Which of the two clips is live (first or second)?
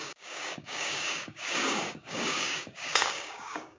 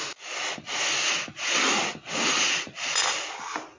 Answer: second